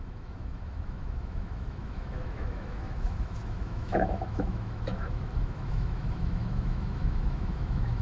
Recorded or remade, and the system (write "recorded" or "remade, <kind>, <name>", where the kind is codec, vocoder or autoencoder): remade, autoencoder, DAC-VAE